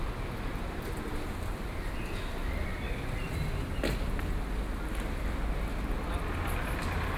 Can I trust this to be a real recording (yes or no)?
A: yes